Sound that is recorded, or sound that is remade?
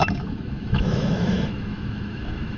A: remade